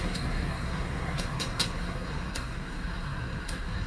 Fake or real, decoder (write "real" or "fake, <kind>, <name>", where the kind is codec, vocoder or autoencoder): fake, codec, SNAC